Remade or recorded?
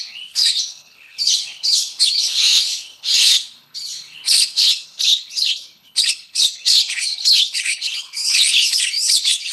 remade